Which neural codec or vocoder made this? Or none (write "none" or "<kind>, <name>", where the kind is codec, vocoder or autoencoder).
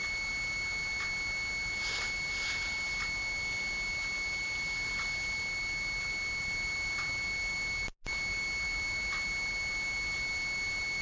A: none